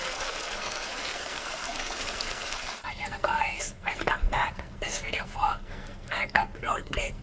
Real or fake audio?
fake